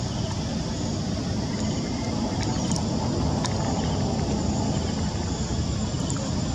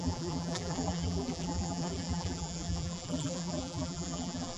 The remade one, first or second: second